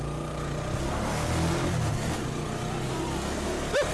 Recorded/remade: recorded